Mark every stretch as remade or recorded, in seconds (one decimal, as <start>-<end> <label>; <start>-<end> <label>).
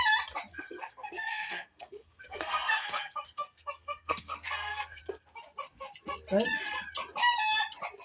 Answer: 0.0-0.5 recorded; 0.5-5.0 remade; 5.0-8.0 recorded